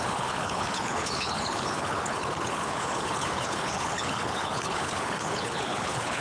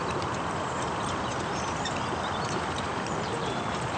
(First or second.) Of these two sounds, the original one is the second